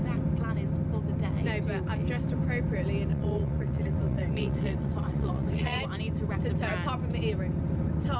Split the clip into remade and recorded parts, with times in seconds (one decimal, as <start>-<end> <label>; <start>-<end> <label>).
0.0-3.1 recorded; 3.1-5.8 remade; 5.8-8.2 recorded